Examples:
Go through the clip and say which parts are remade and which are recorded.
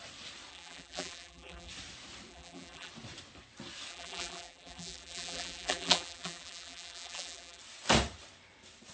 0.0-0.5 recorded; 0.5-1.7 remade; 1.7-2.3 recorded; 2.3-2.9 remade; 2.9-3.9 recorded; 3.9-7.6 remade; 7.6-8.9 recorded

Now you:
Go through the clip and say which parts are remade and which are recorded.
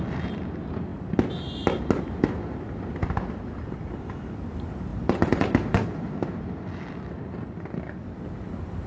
0.0-4.9 recorded; 4.9-6.6 remade; 6.6-8.9 recorded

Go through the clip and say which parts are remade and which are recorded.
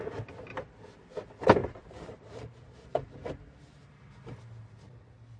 0.0-1.6 recorded; 1.6-4.0 remade; 4.0-5.4 recorded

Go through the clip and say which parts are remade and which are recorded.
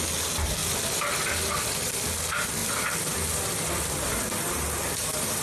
0.0-0.6 recorded; 0.6-1.9 remade; 1.9-2.6 recorded; 2.6-4.5 remade; 4.5-5.4 recorded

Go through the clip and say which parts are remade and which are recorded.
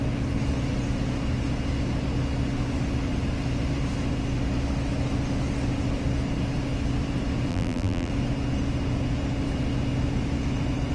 0.0-7.5 recorded; 7.5-8.1 remade; 8.1-10.9 recorded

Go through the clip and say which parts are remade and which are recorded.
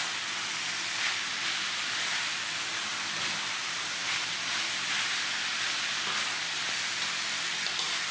0.0-1.3 recorded; 1.3-2.7 remade; 2.7-4.0 recorded; 4.0-7.1 remade; 7.1-8.1 recorded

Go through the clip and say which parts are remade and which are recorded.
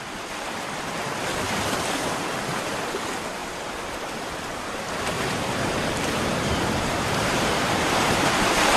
0.0-3.4 recorded; 3.4-6.1 remade; 6.1-7.2 recorded; 7.2-8.1 remade; 8.1-8.8 recorded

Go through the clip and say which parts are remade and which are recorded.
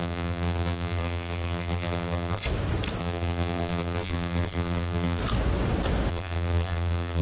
0.0-2.4 remade; 2.4-3.0 recorded; 3.0-5.2 remade; 5.2-6.1 recorded; 6.1-7.2 remade